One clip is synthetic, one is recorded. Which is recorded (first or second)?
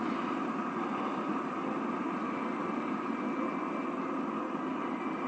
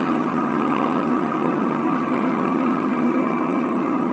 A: first